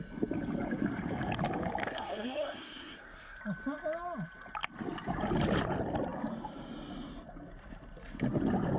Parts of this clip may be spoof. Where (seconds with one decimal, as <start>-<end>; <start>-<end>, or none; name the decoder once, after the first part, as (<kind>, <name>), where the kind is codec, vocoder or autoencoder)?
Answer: 1.8-3.4 (codec, SNAC)